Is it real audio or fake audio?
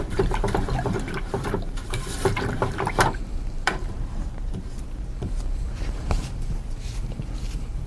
fake